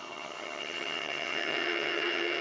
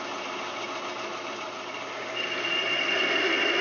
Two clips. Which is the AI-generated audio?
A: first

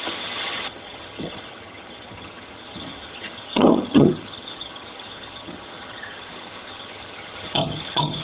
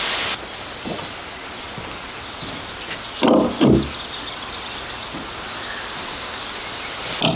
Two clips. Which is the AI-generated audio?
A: first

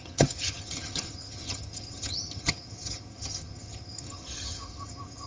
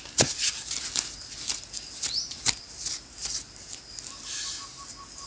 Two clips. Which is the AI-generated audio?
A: first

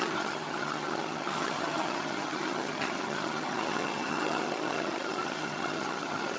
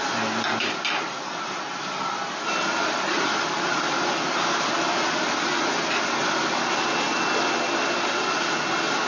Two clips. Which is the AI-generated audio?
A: first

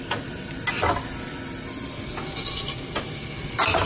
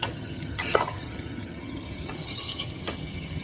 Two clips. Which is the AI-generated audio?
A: second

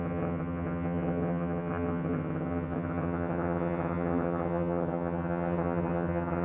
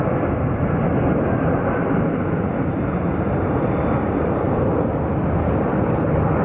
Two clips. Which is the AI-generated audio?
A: first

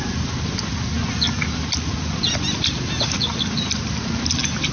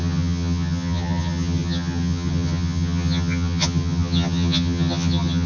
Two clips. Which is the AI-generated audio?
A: second